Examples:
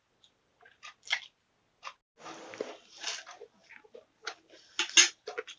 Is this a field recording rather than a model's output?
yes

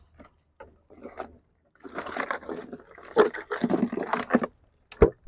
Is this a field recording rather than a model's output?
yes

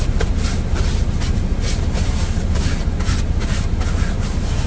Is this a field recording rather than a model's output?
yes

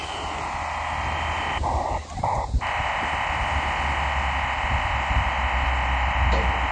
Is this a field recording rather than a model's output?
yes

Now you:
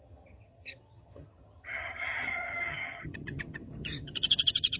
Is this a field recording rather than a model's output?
no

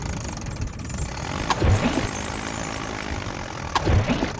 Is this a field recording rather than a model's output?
yes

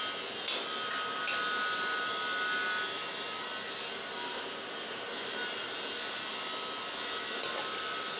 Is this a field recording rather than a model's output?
yes